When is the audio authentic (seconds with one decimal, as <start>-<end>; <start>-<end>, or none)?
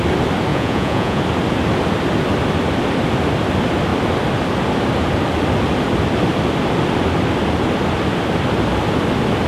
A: 0.0-0.5; 1.2-9.5